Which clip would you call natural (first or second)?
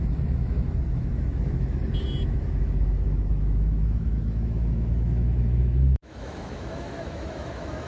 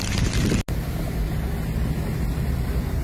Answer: second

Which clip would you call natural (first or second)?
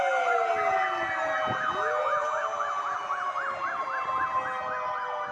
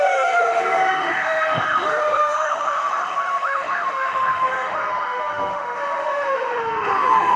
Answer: first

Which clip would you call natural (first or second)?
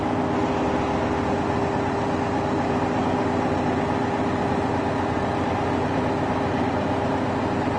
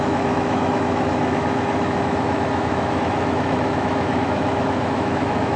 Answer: first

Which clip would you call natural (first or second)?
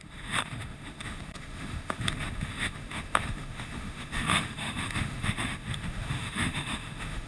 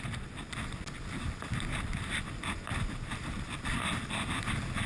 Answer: second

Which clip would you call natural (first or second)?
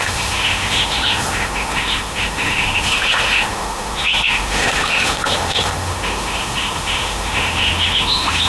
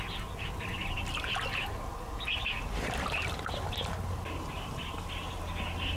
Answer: second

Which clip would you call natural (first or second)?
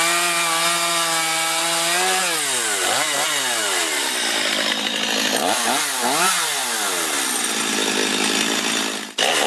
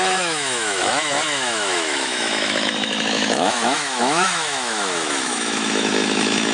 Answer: first